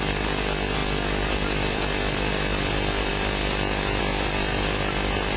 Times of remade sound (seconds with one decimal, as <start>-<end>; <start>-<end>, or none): none